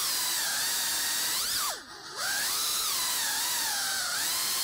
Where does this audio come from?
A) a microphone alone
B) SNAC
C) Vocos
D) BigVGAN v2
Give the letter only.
D